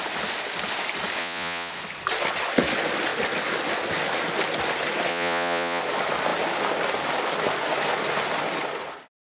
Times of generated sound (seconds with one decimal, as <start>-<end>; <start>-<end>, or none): 1.2-1.7; 5.1-5.8